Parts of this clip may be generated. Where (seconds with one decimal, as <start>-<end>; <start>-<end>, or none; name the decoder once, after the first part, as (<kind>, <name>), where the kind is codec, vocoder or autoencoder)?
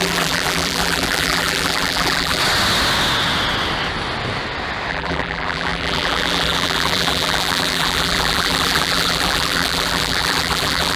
0.0-2.4 (vocoder, BigVGAN v2); 4.9-11.0